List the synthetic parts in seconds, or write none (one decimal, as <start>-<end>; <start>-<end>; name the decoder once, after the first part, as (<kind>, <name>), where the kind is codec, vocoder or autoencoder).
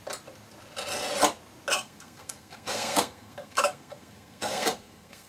1.7-5.3 (codec, SNAC)